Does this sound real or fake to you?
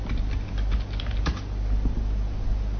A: real